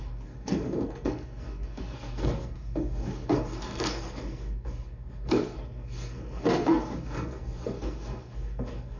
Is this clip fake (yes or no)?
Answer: yes